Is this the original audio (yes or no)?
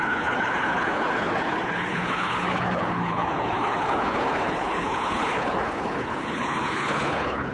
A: no